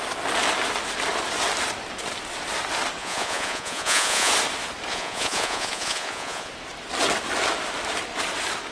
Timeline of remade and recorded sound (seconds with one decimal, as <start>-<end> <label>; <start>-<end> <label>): 0.0-3.0 recorded; 3.0-4.3 remade; 4.3-4.9 recorded; 4.9-6.5 remade; 6.5-8.7 recorded